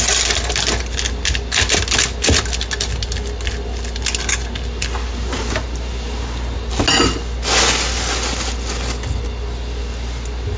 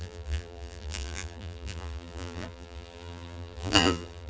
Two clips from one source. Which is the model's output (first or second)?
second